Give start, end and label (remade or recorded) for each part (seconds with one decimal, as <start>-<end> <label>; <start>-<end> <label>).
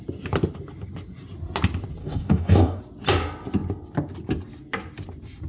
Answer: 0.0-2.0 recorded; 2.0-2.8 remade; 2.8-5.5 recorded